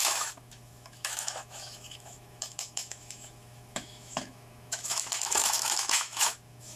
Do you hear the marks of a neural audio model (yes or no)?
yes